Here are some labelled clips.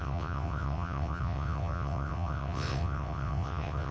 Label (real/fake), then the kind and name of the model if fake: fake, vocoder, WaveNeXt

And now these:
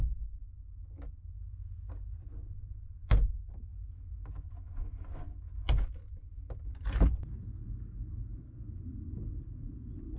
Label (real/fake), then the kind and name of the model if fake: real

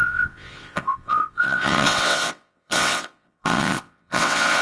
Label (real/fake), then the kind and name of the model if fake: fake, vocoder, WaveNeXt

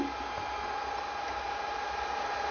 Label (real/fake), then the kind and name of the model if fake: real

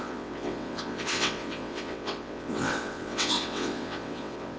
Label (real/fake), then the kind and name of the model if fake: fake, vocoder, WaveNeXt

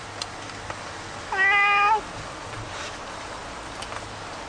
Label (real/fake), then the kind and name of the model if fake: real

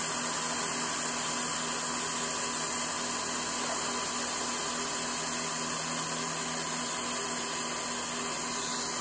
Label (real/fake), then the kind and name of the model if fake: real